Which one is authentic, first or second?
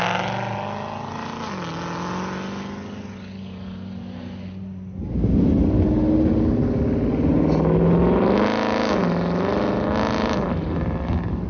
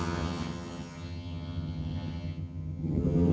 first